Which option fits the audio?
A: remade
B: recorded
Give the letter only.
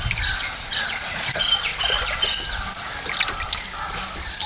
B